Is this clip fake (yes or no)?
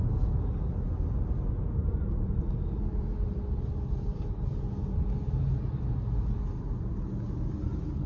no